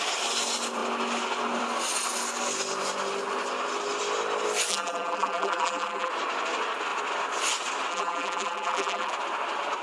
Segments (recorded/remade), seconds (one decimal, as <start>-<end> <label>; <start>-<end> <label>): 0.0-4.7 recorded; 4.7-6.1 remade; 6.1-7.9 recorded; 7.9-9.1 remade; 9.1-9.8 recorded